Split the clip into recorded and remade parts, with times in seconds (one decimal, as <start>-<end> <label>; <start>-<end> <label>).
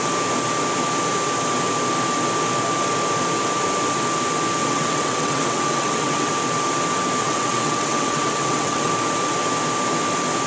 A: 0.0-4.6 recorded; 4.6-6.3 remade; 6.3-7.2 recorded; 7.2-8.9 remade; 8.9-10.5 recorded